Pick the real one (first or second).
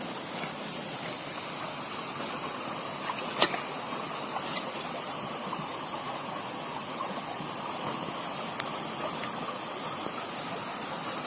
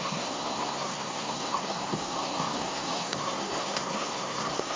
first